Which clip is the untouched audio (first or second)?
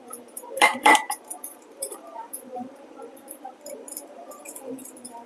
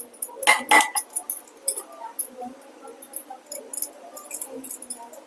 second